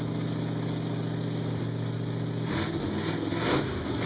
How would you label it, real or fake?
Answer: real